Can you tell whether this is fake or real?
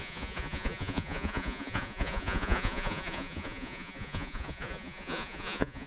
fake